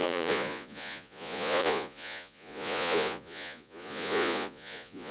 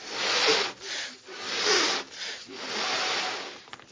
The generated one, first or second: first